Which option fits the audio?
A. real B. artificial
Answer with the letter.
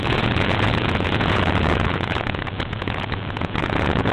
B